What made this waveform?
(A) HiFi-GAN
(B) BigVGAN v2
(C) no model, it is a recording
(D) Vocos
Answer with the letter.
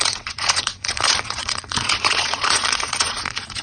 D